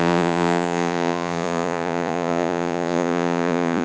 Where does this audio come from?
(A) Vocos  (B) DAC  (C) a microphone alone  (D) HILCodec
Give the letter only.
A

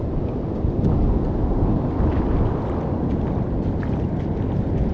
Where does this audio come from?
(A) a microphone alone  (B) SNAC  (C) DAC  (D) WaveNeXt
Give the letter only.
A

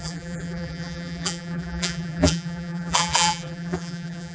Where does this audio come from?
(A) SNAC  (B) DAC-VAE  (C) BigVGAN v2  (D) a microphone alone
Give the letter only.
C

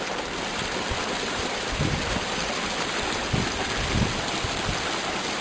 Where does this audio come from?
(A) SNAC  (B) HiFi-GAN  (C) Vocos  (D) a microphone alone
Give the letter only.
D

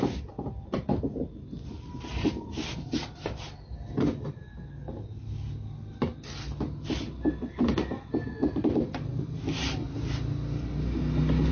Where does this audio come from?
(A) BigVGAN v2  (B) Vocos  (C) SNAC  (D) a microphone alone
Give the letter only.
D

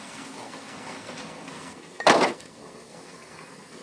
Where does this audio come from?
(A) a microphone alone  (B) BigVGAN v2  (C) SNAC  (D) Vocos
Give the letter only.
C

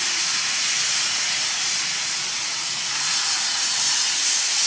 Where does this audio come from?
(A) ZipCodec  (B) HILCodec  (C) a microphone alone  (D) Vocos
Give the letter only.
D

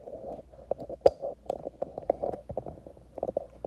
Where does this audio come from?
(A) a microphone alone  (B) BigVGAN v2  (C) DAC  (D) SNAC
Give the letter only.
A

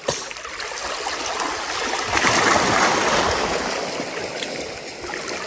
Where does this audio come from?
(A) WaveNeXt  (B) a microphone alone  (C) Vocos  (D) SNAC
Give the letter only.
B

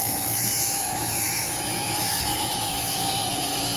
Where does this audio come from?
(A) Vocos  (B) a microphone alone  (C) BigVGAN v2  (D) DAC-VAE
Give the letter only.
D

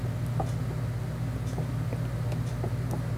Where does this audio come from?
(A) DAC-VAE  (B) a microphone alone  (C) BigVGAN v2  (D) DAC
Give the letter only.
B